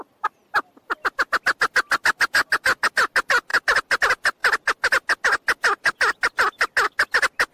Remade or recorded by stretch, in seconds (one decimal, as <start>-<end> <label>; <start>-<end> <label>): 0.0-7.5 recorded